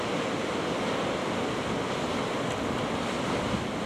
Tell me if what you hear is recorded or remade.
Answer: recorded